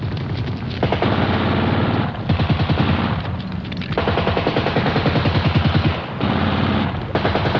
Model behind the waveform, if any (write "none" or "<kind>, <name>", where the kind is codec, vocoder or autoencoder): none